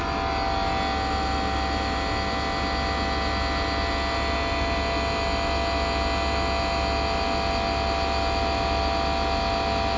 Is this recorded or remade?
recorded